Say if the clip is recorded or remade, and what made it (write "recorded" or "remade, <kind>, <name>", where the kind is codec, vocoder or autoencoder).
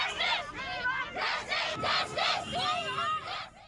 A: recorded